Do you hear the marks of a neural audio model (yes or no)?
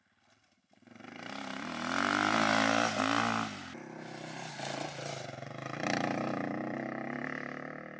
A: no